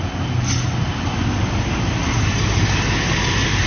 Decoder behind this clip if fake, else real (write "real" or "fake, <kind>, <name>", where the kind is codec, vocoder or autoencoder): real